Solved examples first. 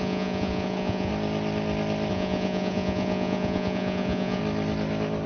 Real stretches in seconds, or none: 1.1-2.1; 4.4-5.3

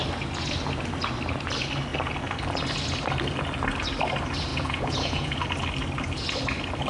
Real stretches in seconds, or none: 0.0-4.5; 5.4-6.9

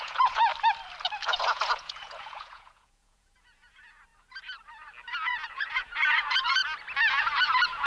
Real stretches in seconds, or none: 0.5-1.3; 4.1-5.5; 6.6-7.2